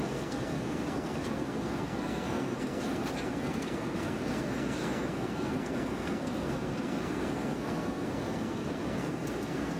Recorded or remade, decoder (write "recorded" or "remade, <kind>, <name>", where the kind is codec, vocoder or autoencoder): remade, codec, SNAC